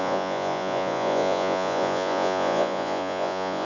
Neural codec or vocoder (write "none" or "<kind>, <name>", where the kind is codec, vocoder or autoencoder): vocoder, Vocos